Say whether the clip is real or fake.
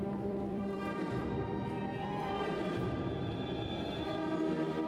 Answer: fake